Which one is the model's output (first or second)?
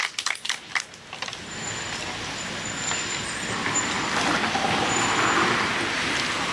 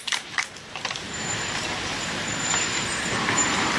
second